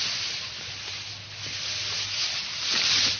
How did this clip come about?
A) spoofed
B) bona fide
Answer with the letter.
B